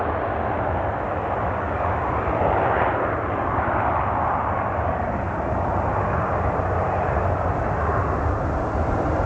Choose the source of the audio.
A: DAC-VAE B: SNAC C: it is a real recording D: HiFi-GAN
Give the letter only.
C